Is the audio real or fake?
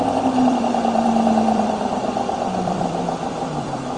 fake